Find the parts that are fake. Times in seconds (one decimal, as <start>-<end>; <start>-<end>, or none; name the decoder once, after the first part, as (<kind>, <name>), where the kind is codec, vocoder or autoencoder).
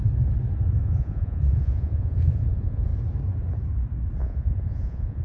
0.8-2.9 (vocoder, Vocos); 4.2-5.2